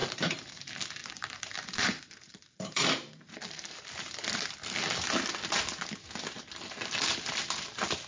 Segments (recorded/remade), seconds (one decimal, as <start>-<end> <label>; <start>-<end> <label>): 0.0-0.6 remade; 0.6-1.0 recorded; 1.0-3.9 remade; 3.9-8.1 recorded